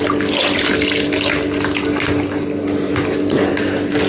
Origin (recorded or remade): recorded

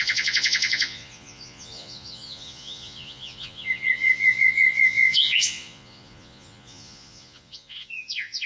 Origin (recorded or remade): remade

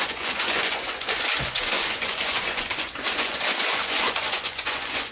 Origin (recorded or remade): remade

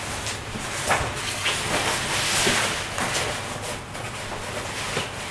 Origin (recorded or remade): recorded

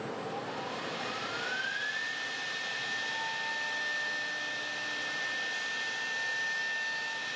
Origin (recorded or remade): recorded